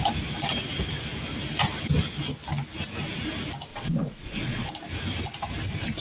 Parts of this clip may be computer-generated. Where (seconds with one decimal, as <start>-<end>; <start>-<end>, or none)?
3.7-4.7